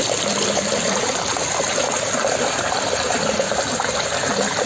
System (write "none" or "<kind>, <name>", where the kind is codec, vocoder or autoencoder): none